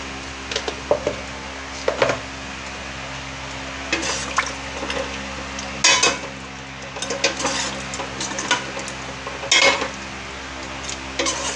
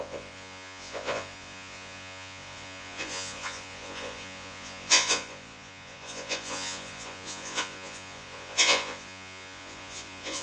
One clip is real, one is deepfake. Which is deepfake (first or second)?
second